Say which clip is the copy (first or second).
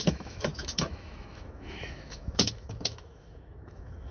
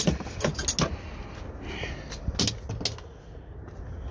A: first